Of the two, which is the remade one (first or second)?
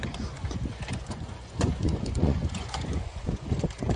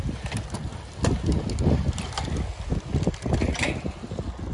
first